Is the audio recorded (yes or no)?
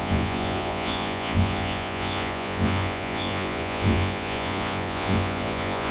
no